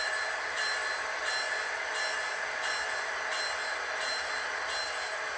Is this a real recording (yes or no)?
yes